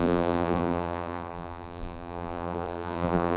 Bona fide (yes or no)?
no